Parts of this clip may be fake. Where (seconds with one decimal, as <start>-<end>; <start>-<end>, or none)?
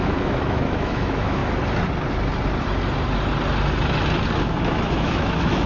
0.0-1.4; 4.4-5.7